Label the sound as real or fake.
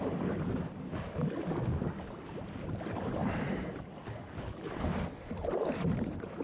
real